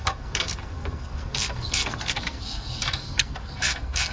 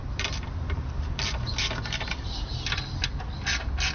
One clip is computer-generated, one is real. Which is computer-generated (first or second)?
first